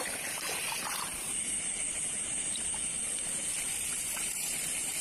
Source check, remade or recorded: remade